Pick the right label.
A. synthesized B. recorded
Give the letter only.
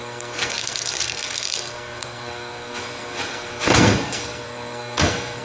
A